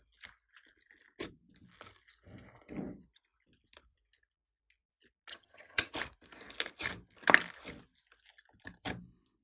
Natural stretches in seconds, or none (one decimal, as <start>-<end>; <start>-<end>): 0.0-5.3; 5.9-9.4